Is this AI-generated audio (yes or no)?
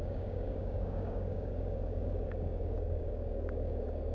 yes